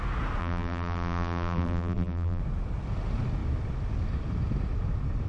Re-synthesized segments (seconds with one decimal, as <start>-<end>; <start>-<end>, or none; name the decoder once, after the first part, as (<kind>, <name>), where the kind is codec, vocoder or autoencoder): 0.4-2.4 (vocoder, BigVGAN v2)